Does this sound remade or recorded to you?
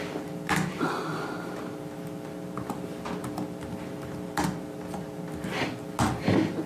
recorded